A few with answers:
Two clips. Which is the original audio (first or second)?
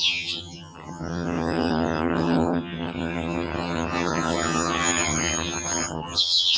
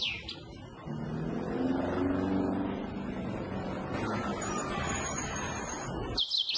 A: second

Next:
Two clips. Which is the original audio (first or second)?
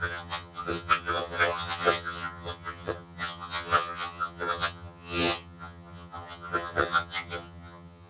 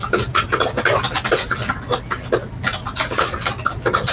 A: second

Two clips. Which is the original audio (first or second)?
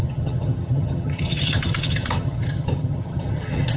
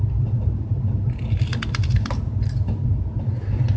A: second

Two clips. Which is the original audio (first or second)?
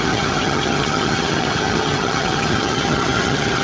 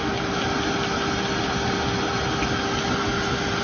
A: second